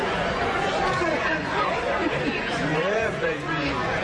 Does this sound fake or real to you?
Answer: fake